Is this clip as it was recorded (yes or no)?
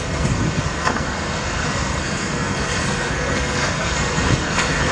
no